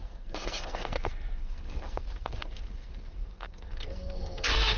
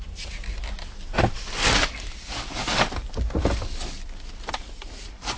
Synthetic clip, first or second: first